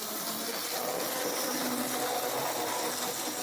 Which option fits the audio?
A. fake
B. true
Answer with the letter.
B